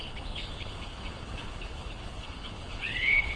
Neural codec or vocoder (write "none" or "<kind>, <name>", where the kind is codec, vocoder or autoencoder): codec, HILCodec